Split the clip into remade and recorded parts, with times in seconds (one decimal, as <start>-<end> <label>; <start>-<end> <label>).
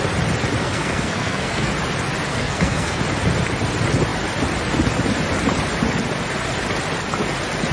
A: 0.0-0.6 recorded; 0.6-1.7 remade; 1.7-2.3 recorded; 2.3-3.0 remade; 3.0-7.7 recorded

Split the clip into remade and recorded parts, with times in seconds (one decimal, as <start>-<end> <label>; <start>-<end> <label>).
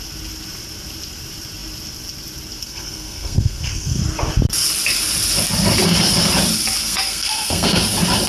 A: 0.0-2.6 recorded; 2.6-4.0 remade; 4.0-6.8 recorded; 6.8-7.8 remade; 7.8-8.3 recorded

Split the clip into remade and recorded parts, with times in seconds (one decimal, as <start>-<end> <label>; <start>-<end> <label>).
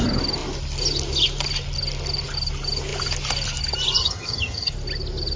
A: 0.0-4.0 recorded; 4.0-4.7 remade; 4.7-5.4 recorded